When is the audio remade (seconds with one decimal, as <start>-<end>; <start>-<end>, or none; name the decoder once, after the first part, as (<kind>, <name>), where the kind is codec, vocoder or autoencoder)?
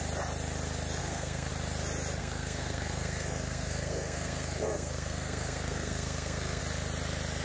1.0-1.5 (codec, SNAC); 2.2-6.6